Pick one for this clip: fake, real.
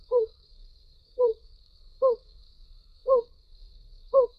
fake